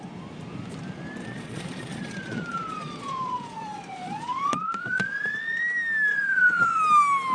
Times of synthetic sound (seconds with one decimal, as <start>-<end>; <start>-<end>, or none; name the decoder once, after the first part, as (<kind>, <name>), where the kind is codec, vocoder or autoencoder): 1.2-5.6 (vocoder, Vocos); 6.1-6.8